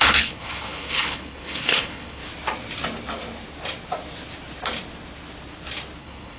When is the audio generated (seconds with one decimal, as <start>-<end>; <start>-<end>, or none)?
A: 0.0-2.2; 6.0-6.4